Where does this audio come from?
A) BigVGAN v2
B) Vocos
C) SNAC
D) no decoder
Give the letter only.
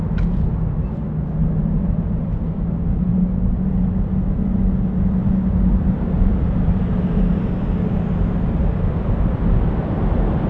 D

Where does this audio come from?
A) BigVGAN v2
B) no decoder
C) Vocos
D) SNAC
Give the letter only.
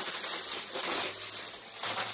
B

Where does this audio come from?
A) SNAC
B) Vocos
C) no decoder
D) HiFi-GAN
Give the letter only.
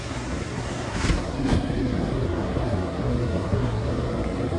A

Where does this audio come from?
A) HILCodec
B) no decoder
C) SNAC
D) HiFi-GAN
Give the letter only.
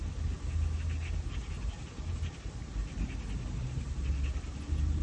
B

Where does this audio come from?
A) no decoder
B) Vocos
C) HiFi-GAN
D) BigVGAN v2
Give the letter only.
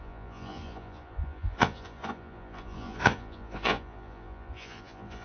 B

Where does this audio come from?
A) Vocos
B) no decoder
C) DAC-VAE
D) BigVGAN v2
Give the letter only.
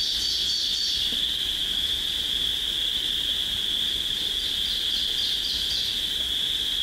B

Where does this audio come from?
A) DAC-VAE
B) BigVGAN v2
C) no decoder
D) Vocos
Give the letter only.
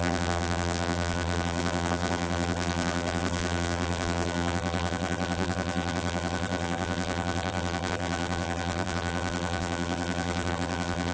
B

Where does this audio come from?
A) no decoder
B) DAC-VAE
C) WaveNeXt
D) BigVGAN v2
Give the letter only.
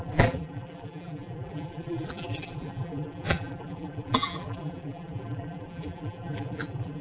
D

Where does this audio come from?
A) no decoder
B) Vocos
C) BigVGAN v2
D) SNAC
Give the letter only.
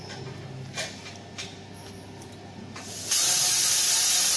A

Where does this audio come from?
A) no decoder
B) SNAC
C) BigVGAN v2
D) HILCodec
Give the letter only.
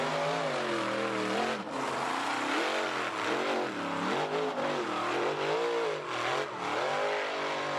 A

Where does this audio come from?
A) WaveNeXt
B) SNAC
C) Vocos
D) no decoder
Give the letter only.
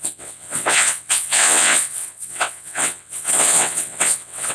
A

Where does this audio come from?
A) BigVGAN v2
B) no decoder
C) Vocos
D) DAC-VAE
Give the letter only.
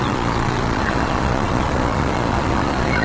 C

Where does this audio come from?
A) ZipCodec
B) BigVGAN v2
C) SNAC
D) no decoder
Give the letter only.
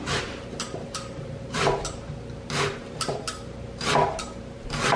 B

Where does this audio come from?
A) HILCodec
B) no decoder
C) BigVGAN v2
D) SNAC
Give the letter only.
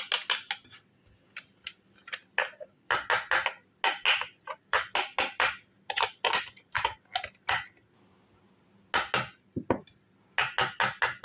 B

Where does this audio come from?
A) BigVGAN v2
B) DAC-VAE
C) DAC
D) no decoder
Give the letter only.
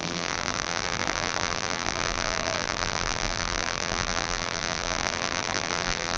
A